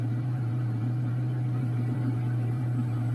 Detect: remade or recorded remade